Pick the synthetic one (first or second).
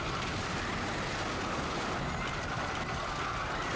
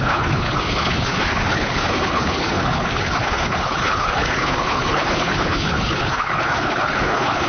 second